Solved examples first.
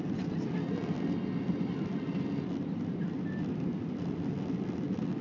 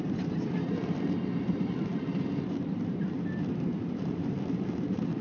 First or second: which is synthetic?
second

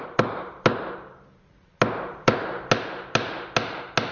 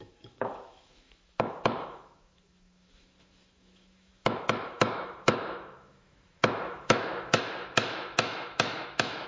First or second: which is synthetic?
second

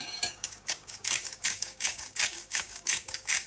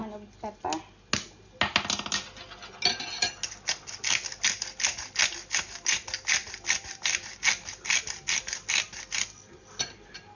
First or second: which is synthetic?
first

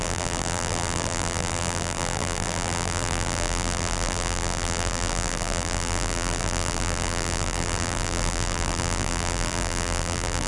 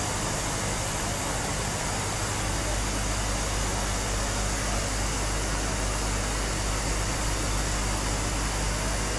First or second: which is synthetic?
first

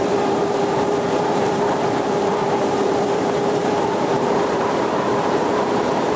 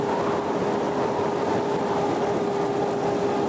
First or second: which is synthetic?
first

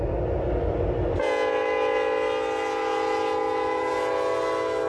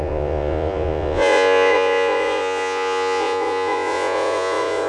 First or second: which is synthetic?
second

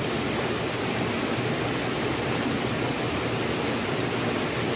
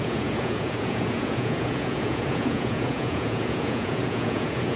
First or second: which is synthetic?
second